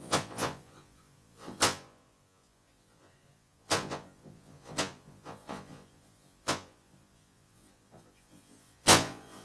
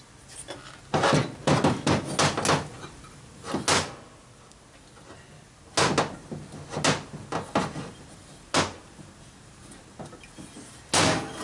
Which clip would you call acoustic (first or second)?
second